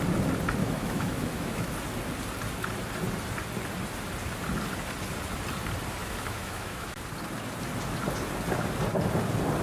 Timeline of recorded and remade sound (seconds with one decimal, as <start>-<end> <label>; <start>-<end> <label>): 0.0-0.6 recorded; 0.6-1.7 remade; 1.7-6.0 recorded; 6.0-7.0 remade; 7.0-9.6 recorded